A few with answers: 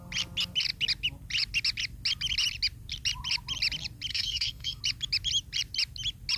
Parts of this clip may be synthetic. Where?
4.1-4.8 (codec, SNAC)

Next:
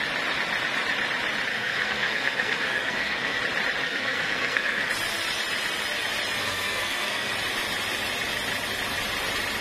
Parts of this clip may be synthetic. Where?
1.5-3.4 (codec, SNAC); 3.8-4.9; 6.4-7.3

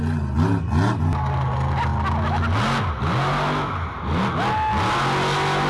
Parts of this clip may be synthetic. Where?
none